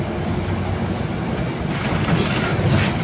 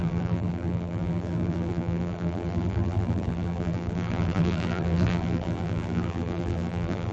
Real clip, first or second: first